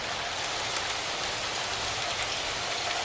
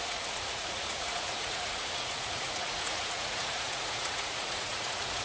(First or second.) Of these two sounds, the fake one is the second